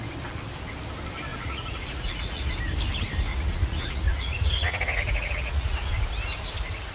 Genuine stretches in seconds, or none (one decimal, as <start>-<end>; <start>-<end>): 0.0-1.3; 2.5-3.3; 5.9-6.9